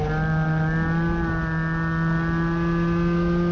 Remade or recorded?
recorded